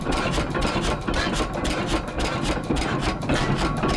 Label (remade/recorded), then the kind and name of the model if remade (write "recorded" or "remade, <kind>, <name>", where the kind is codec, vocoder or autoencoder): recorded